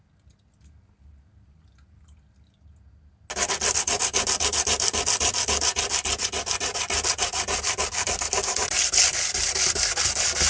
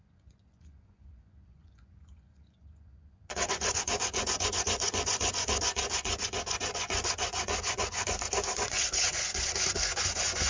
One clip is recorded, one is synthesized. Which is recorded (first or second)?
first